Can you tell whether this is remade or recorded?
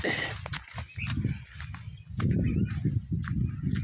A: recorded